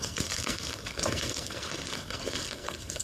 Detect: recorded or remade remade